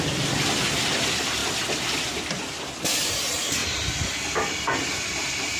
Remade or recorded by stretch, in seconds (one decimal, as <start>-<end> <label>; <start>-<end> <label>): 0.0-5.6 recorded